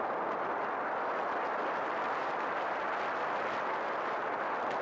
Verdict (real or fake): real